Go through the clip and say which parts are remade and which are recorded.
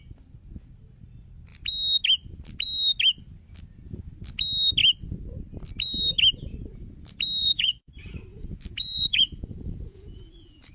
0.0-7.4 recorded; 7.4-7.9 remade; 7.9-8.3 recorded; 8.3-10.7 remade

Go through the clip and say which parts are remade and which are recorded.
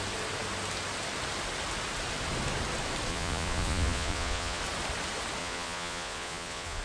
0.0-3.1 recorded; 3.1-4.6 remade; 4.6-5.4 recorded; 5.4-6.8 remade